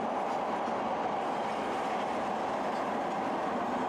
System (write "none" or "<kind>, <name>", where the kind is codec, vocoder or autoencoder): none